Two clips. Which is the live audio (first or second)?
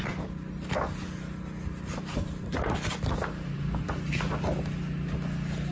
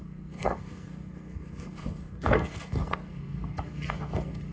first